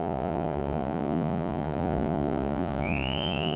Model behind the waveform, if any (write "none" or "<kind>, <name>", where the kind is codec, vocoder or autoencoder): vocoder, Vocos